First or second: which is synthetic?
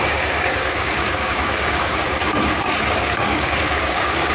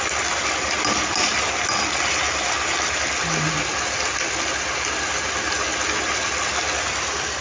first